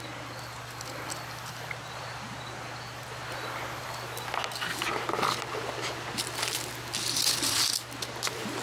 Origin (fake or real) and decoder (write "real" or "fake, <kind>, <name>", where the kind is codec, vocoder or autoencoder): real